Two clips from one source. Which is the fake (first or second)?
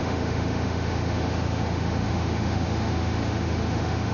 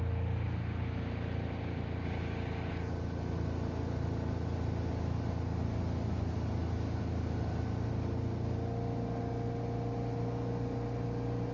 first